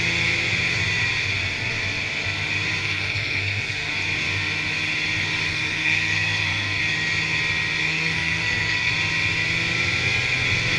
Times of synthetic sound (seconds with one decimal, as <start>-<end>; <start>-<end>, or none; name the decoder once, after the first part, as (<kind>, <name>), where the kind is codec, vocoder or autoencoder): 2.8-3.9 (codec, SNAC); 5.5-6.8; 7.8-8.9

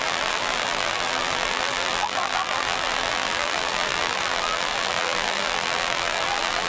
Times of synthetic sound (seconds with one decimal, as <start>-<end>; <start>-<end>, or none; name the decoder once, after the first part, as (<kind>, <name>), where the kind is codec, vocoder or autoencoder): 0.0-6.7 (vocoder, BigVGAN v2)